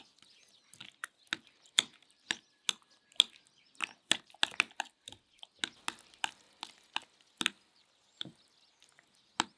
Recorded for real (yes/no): yes